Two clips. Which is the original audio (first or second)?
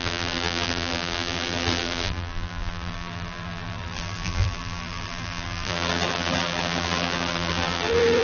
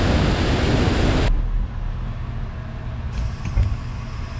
second